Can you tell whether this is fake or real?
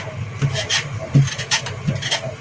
real